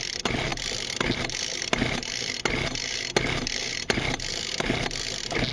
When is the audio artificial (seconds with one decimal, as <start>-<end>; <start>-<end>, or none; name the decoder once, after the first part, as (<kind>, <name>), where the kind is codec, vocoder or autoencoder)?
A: 0.5-1.2 (vocoder, BigVGAN v2)